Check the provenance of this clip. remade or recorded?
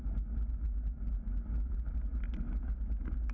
recorded